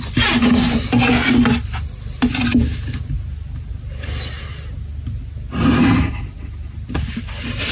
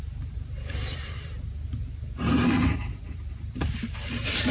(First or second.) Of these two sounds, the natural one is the first